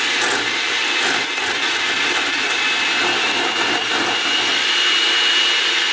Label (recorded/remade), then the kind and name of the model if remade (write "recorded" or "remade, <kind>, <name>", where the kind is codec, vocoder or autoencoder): recorded